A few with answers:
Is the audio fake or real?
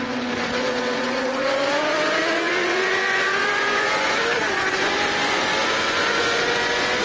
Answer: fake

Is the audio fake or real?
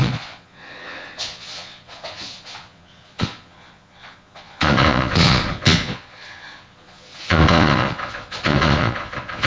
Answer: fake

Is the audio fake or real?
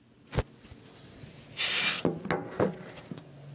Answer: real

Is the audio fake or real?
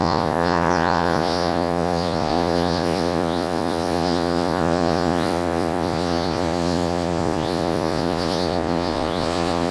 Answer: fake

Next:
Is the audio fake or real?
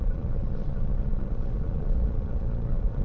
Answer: fake